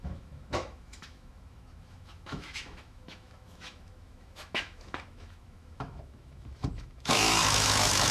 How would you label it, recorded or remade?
remade